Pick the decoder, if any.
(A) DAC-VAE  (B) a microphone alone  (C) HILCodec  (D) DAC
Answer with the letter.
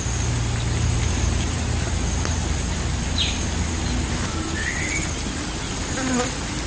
B